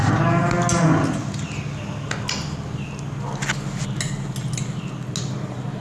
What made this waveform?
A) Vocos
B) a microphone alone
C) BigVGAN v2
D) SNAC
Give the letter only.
B